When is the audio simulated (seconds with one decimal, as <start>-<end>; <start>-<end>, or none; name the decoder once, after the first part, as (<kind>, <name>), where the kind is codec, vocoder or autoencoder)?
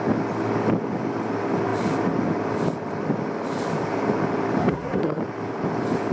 4.6-5.2 (codec, SNAC)